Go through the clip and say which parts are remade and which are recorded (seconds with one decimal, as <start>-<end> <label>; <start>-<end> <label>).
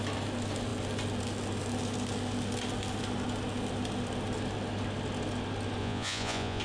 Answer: 0.0-5.8 recorded; 5.8-6.6 remade